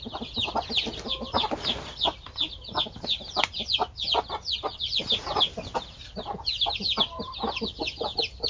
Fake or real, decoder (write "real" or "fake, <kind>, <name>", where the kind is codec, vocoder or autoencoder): real